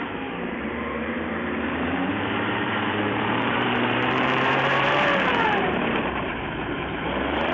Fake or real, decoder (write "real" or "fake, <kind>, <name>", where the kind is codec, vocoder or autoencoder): fake, vocoder, BigVGAN v2